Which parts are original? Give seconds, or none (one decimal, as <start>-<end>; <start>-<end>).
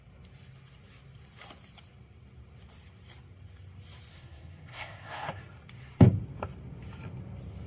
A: 0.0-4.1; 5.4-7.7